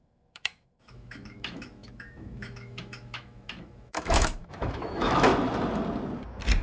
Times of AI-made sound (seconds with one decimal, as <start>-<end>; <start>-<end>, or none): 0.0-5.3